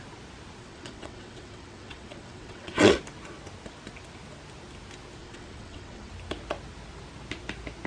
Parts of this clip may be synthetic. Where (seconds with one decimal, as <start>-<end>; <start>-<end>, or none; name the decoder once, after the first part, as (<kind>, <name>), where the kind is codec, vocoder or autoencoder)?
0.6-3.0 (vocoder, WaveNeXt); 5.2-6.1